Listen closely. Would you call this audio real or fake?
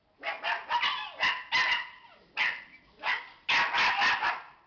real